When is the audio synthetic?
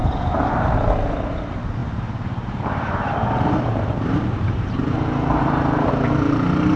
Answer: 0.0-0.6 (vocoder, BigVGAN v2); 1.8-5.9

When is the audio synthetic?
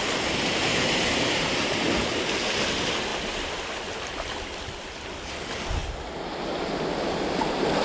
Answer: 0.6-1.6 (vocoder, BigVGAN v2)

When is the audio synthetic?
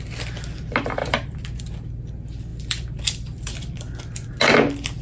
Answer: 1.0-1.6 (vocoder, BigVGAN v2); 2.5-4.3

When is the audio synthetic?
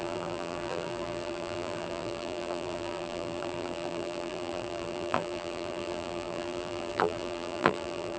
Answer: 0.0-8.2 (vocoder, BigVGAN v2)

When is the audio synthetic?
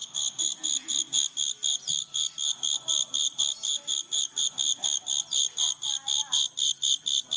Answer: none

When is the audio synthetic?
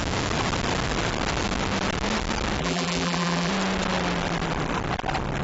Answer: 2.6-3.5 (vocoder, BigVGAN v2)